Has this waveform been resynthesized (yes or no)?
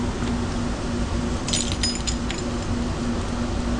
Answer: no